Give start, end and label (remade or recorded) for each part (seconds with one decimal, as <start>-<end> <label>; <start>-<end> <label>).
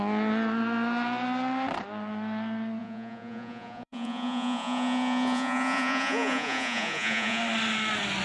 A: 0.0-2.8 recorded; 2.8-7.4 remade; 7.4-8.2 recorded